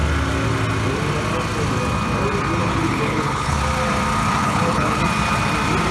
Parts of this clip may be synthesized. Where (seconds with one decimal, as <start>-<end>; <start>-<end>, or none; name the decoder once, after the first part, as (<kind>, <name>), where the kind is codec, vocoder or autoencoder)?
2.6-3.6 (codec, HILCodec); 4.4-5.0